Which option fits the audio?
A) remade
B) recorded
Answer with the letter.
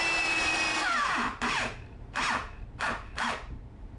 A